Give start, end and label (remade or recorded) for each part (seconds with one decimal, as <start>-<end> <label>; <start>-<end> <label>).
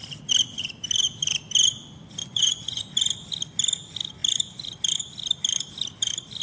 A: 0.0-2.2 recorded; 2.2-2.8 remade; 2.8-6.4 recorded